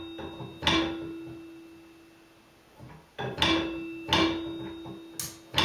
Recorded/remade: recorded